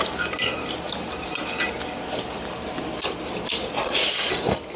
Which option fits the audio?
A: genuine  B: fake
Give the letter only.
A